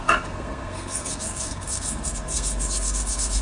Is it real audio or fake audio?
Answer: fake